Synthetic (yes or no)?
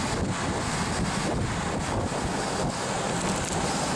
no